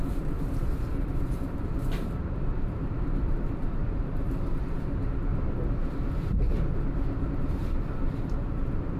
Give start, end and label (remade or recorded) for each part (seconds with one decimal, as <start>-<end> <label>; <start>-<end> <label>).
0.0-5.3 remade; 5.3-7.3 recorded; 7.3-9.0 remade